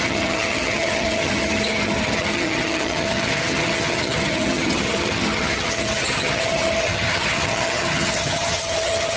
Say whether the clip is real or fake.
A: fake